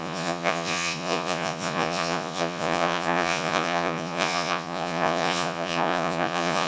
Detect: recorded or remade remade